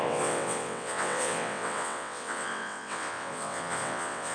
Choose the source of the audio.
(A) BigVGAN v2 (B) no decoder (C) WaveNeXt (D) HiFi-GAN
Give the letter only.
C